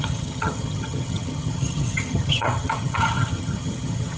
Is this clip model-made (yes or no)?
yes